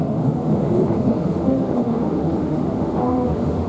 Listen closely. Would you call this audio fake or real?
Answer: fake